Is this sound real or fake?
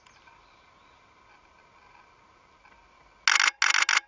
real